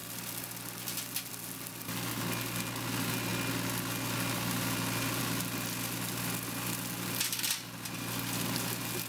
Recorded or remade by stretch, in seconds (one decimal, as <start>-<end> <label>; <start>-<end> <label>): 0.0-9.1 recorded